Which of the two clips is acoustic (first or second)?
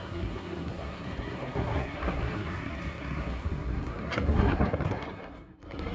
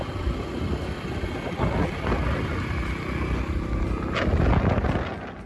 second